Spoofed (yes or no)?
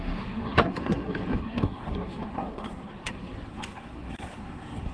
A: yes